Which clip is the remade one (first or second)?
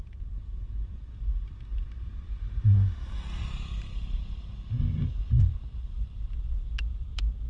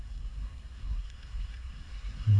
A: second